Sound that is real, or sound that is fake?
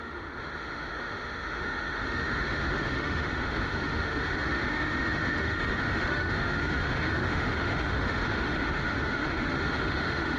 fake